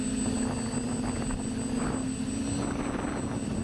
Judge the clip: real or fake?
real